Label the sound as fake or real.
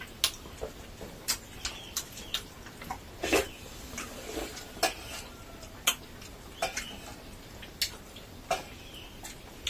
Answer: real